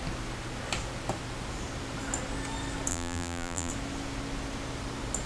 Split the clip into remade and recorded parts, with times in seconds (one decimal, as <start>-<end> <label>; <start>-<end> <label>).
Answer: 0.0-2.9 recorded; 2.9-3.7 remade; 3.7-5.3 recorded

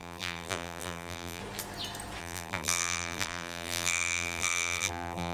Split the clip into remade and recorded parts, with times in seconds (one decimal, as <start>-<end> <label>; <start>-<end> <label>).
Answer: 0.0-1.4 remade; 1.4-2.2 recorded; 2.2-5.3 remade